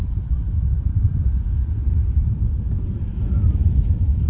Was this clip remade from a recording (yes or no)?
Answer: no